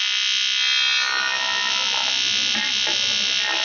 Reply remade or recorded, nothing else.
recorded